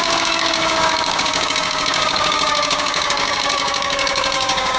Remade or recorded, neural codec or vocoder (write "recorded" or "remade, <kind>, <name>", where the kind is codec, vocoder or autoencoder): remade, codec, DAC